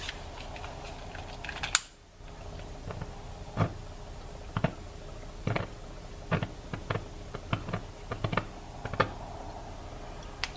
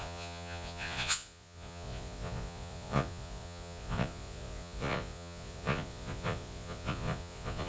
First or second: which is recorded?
first